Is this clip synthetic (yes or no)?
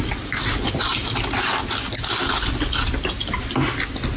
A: no